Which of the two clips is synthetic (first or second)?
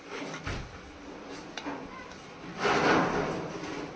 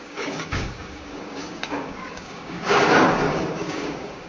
second